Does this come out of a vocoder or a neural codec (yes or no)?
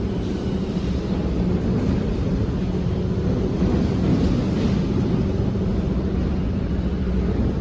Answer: no